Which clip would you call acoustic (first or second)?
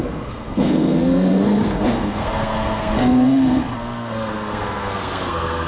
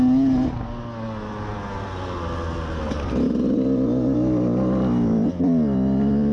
second